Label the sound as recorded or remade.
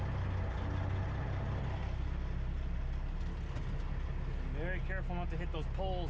recorded